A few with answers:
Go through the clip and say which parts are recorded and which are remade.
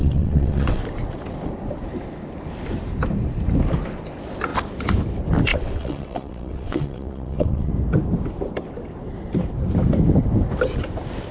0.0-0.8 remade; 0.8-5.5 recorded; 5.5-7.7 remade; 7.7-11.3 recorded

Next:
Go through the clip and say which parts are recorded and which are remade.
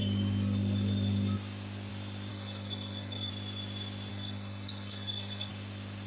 0.0-2.3 recorded; 2.3-3.3 remade; 3.3-4.1 recorded; 4.1-5.5 remade; 5.5-6.1 recorded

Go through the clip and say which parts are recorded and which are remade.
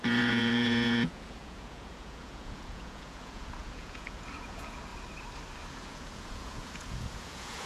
0.0-4.9 remade; 4.9-5.7 recorded; 5.7-7.7 remade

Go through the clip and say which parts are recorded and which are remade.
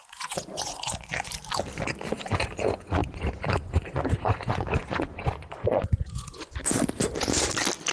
0.0-1.3 remade; 1.3-2.1 recorded; 2.1-6.6 remade; 6.6-7.9 recorded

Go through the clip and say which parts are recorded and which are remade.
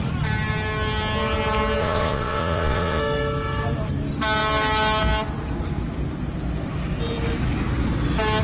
0.0-1.8 recorded; 1.8-3.0 remade; 3.0-8.4 recorded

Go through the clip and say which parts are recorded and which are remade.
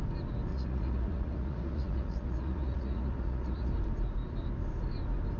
0.0-0.5 recorded; 0.5-3.7 remade; 3.7-5.4 recorded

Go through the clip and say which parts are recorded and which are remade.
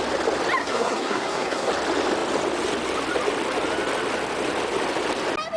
0.0-0.6 recorded; 0.6-1.7 remade; 1.7-5.6 recorded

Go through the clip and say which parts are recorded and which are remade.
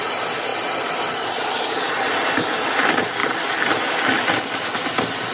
0.0-0.5 recorded; 0.5-2.4 remade; 2.4-3.2 recorded; 3.2-4.3 remade; 4.3-5.3 recorded